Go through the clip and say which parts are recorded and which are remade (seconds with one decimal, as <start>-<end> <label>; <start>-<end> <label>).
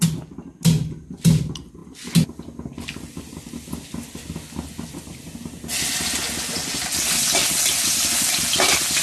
0.0-9.0 recorded